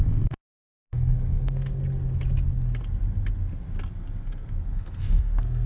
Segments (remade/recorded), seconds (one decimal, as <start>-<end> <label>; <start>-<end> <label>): 0.0-1.8 remade; 1.8-4.2 recorded; 4.2-5.7 remade